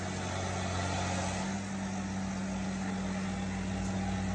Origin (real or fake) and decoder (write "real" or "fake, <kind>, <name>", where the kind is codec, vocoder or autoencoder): real